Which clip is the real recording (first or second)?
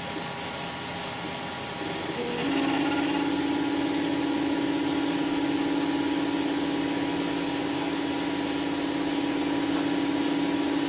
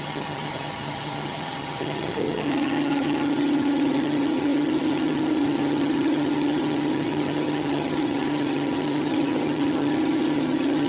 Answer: first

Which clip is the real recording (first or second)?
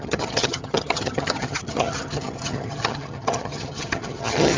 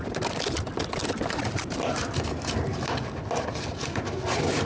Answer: second